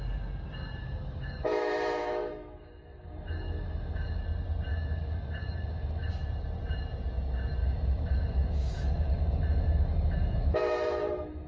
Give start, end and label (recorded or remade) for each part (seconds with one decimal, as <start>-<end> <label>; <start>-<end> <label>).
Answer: 0.0-0.8 recorded; 0.8-4.2 remade; 4.2-4.7 recorded; 4.7-6.1 remade; 6.1-7.6 recorded; 7.6-11.5 remade